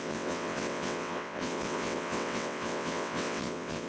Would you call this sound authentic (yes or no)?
no